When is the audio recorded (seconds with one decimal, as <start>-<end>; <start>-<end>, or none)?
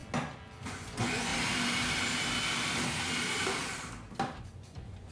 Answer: 0.0-0.6; 1.3-4.4